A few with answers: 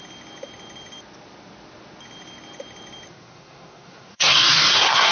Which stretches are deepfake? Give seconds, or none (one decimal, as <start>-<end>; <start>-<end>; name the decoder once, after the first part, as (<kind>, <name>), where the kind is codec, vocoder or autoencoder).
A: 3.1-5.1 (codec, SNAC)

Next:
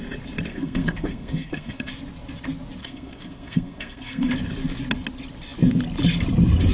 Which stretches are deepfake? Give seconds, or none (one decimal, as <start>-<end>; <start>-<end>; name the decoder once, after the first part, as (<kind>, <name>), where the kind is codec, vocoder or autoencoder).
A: 0.5-1.9 (codec, SNAC); 2.8-4.3

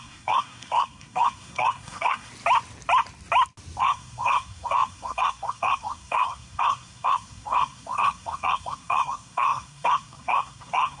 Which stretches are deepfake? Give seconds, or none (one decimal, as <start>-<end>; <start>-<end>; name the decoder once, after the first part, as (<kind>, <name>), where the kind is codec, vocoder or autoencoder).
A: 0.0-2.3 (codec, SNAC); 3.8-11.0

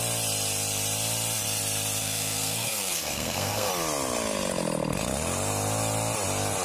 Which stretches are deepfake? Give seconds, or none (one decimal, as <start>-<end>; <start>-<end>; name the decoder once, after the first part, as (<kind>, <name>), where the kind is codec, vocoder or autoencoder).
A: 2.0-3.7 (codec, SNAC)

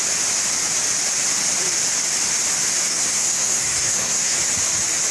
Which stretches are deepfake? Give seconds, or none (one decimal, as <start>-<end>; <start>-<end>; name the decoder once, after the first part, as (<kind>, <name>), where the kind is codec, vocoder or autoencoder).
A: 2.9-4.4 (codec, SNAC)

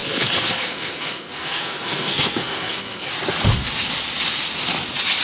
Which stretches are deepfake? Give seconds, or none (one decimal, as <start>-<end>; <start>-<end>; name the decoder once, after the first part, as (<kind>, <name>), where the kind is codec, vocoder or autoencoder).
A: 0.0-3.1 (codec, SNAC)